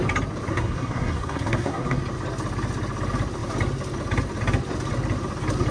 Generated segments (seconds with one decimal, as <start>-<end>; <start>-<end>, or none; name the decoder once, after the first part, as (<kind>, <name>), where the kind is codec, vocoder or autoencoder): 0.5-2.0 (codec, SNAC)